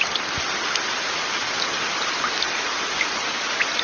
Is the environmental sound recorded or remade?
recorded